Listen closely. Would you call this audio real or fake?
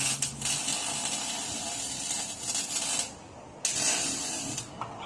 real